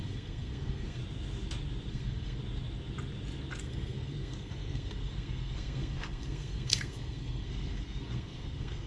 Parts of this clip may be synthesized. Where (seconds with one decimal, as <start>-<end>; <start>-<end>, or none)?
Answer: 0.0-1.0; 1.9-2.4; 3.6-8.9